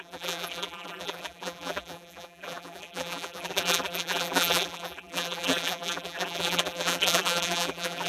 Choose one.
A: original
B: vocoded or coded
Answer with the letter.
B